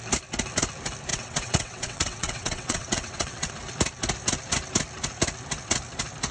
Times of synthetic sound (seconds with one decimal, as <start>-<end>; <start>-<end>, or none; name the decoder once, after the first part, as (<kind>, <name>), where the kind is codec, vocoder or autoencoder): 1.1-3.5 (vocoder, WaveNeXt)